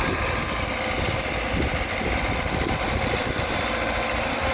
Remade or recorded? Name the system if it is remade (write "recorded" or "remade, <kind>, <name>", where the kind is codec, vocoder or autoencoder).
recorded